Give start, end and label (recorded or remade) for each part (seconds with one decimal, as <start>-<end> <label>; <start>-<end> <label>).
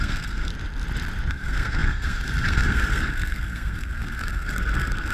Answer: 0.0-0.5 remade; 0.5-1.3 recorded; 1.3-5.1 remade